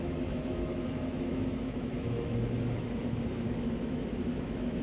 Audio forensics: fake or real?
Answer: fake